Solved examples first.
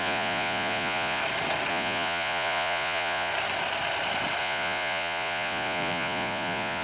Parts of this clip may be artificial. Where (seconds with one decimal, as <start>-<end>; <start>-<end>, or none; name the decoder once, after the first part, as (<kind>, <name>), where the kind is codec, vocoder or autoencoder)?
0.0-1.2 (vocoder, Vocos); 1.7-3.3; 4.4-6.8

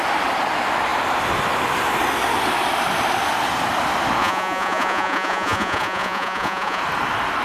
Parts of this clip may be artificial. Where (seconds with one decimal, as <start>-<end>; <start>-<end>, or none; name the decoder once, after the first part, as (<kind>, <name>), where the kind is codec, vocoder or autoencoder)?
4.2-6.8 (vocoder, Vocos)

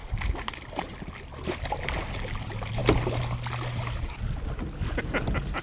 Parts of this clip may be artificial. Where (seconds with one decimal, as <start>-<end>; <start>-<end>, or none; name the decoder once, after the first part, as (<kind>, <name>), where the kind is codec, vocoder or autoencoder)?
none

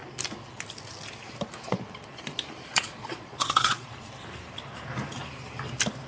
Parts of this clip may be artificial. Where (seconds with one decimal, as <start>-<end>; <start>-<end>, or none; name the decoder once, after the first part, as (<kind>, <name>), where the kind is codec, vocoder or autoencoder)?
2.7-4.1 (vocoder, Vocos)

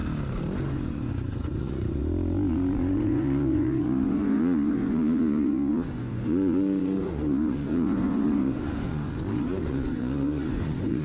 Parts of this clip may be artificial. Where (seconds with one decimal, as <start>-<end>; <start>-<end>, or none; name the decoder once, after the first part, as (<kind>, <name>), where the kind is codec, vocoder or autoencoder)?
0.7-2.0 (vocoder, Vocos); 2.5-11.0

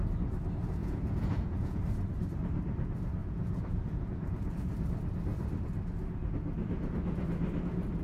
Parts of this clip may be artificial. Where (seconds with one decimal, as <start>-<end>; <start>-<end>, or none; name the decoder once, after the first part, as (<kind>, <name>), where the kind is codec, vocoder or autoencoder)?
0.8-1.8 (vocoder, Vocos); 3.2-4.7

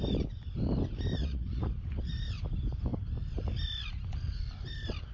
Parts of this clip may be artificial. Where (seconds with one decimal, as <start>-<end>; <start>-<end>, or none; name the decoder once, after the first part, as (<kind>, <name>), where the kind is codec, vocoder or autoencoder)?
1.2-2.0 (vocoder, Vocos)